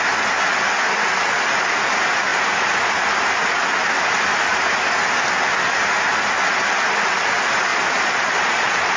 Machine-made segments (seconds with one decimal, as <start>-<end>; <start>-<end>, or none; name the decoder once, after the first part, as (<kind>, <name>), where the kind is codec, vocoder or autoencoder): 7.7-9.0 (vocoder, Vocos)

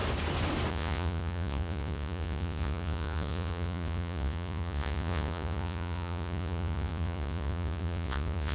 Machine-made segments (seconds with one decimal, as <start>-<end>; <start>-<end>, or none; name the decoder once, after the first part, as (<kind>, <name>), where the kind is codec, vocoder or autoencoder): 0.7-8.5 (vocoder, Vocos)

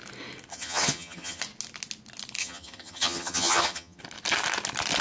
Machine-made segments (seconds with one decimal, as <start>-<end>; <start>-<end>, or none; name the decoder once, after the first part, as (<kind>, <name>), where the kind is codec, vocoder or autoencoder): 0.5-1.4 (vocoder, HiFi-GAN); 2.4-4.0

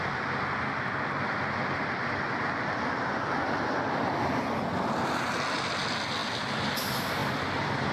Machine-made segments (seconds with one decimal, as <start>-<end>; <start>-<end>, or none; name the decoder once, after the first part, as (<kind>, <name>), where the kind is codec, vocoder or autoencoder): 7.2-7.9 (vocoder, BigVGAN v2)

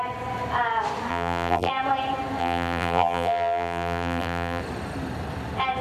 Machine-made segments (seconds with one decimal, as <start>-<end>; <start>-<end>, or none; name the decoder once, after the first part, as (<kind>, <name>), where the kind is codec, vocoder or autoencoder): 1.1-1.7 (vocoder, BigVGAN v2); 2.4-4.6

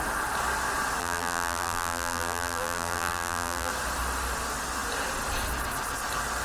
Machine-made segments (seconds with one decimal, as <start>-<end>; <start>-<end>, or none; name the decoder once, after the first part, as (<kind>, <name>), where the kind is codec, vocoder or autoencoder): 1.0-3.7 (vocoder, BigVGAN v2)

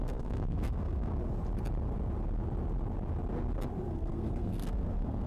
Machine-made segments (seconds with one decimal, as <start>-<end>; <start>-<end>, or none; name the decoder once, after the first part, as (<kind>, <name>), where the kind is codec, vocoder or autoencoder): 0.0-1.1 (codec, SNAC); 3.8-5.3

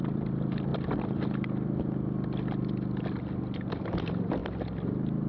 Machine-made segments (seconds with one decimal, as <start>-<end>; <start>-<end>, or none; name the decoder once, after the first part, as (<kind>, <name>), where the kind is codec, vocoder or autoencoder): 0.0-0.7 (vocoder, BigVGAN v2); 3.7-4.4